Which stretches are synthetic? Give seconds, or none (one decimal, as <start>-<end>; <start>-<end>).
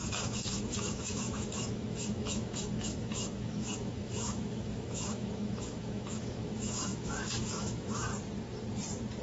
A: 0.0-8.1